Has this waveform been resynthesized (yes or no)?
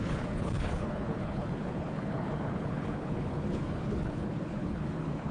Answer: yes